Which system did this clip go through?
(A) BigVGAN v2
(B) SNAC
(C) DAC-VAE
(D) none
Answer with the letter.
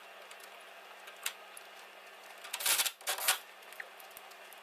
D